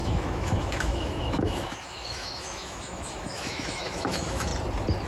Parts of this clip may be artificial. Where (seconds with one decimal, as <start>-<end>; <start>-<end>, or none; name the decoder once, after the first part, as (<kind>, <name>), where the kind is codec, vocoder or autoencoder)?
0.0-4.5 (autoencoder, DAC-VAE)